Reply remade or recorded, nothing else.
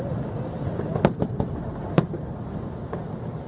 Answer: recorded